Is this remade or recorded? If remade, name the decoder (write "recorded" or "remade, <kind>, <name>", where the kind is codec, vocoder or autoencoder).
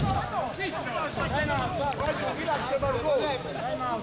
recorded